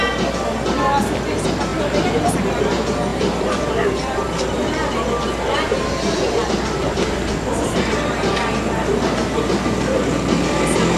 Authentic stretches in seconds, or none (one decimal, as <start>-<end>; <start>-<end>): 0.0-3.1; 4.7-11.0